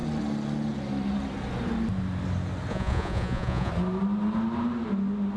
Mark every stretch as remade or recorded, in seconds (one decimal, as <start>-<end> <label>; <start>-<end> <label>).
0.0-2.7 recorded; 2.7-3.7 remade; 3.7-5.4 recorded

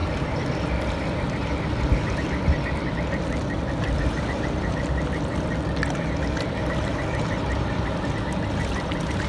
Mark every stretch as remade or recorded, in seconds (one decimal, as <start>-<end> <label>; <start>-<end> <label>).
0.0-9.3 recorded

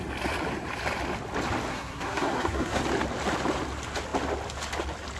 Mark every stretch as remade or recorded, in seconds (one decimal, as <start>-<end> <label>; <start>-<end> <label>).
0.0-1.7 recorded; 1.7-2.8 remade; 2.8-5.2 recorded

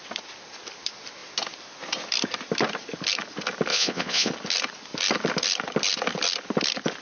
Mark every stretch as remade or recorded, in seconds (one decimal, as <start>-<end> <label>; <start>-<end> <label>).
0.0-3.7 recorded; 3.7-4.3 remade; 4.3-7.0 recorded

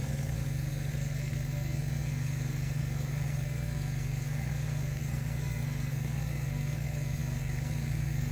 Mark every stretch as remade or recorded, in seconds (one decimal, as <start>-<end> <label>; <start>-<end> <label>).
0.0-8.3 remade

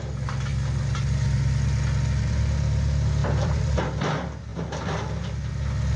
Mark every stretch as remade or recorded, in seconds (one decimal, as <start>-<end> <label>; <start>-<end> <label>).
0.0-3.2 recorded; 3.2-3.8 remade; 3.8-6.0 recorded

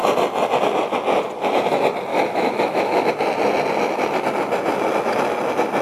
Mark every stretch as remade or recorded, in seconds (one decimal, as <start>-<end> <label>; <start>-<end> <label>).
0.0-2.1 recorded; 2.1-3.1 remade; 3.1-5.8 recorded

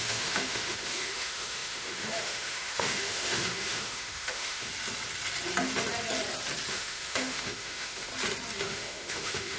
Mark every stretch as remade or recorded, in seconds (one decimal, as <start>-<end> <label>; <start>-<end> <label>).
0.0-4.7 remade; 4.7-6.7 recorded; 6.7-8.1 remade; 8.1-8.6 recorded; 8.6-9.6 remade